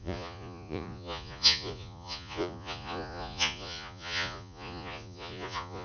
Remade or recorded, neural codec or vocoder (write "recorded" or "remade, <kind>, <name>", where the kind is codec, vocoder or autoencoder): remade, vocoder, Vocos